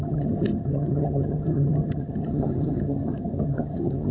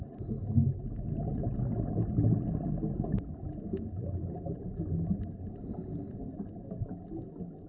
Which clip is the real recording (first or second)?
second